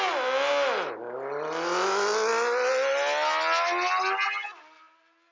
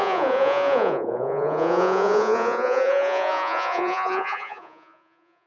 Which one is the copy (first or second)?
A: second